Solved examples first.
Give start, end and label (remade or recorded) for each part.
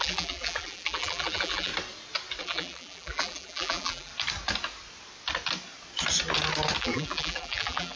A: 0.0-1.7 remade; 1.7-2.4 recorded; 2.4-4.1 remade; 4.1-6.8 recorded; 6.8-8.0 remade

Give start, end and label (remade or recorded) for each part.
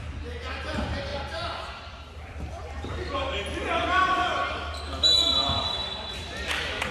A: 0.0-1.1 recorded; 1.1-4.8 remade; 4.8-5.8 recorded; 5.8-6.9 remade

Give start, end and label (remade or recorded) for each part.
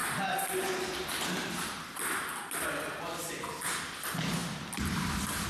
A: 0.0-3.3 remade; 3.3-5.5 recorded